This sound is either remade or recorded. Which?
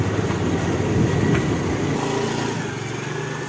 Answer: recorded